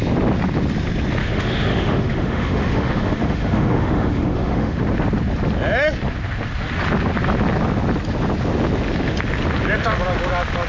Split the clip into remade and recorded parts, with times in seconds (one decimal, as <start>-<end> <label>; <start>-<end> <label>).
0.0-1.2 recorded; 1.2-4.8 remade; 4.8-10.7 recorded